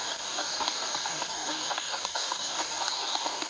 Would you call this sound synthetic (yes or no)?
yes